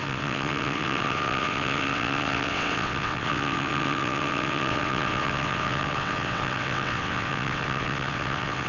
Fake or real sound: fake